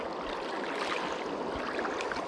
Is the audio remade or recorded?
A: recorded